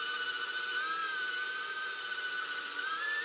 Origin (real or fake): real